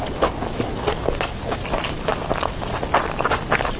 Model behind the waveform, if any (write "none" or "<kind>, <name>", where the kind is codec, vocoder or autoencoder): none